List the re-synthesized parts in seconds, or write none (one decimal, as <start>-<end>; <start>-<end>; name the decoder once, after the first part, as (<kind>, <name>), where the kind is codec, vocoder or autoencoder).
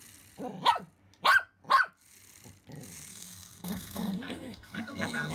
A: 3.1-5.3 (codec, SNAC)